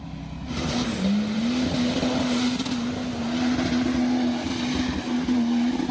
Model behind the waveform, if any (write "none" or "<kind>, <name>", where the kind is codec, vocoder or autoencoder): none